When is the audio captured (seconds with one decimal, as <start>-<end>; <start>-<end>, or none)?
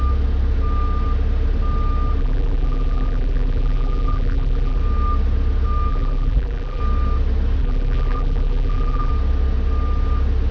0.0-2.2; 4.8-5.9; 6.8-7.6; 9.1-10.5